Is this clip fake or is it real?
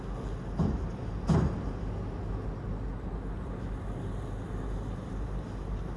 real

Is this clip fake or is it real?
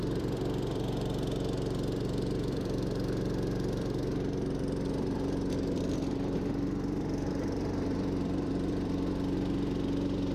fake